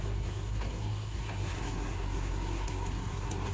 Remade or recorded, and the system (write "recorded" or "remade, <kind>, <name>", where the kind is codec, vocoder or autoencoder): remade, codec, SNAC